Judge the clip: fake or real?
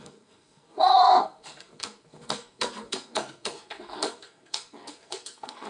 fake